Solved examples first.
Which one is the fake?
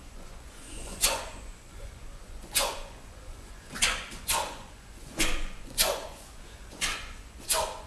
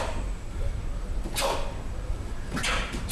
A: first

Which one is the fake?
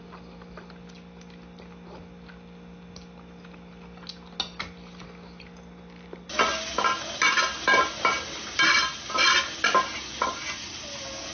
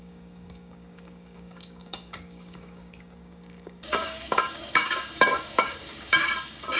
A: second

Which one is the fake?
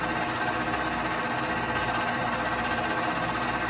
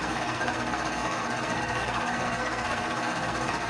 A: second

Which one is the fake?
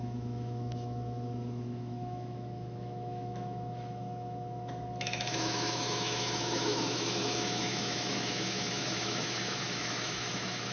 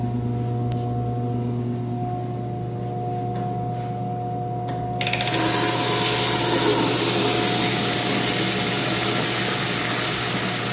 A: first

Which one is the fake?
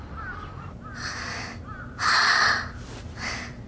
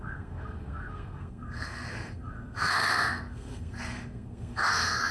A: second